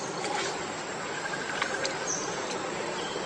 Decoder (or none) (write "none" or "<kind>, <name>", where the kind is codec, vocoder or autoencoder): none